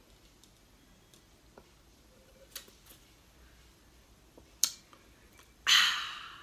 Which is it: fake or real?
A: real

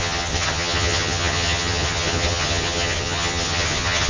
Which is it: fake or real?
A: fake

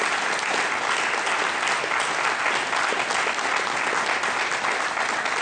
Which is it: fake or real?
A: real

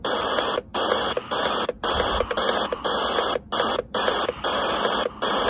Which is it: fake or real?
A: real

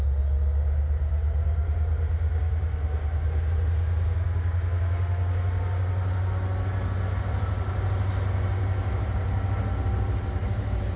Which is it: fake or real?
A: real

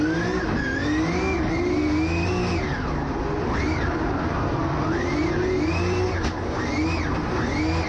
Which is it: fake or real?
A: real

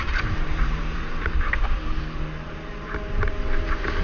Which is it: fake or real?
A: fake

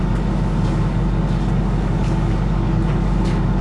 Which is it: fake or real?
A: fake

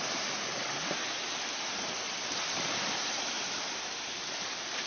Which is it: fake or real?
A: real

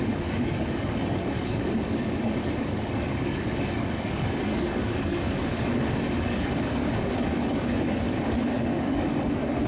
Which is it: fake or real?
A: fake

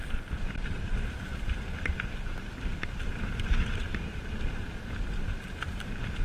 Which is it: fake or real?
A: fake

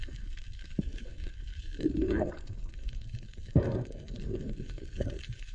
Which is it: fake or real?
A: fake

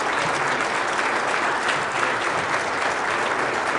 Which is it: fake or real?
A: real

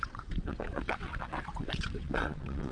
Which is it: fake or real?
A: fake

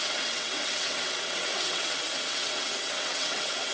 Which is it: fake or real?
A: fake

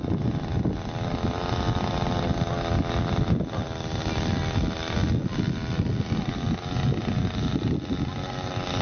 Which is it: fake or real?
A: real